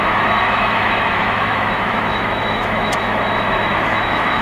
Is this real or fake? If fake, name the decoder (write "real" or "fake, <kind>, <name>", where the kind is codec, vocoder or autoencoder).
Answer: fake, autoencoder, DAC-VAE